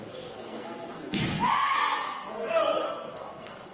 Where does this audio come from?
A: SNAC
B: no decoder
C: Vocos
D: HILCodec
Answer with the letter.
A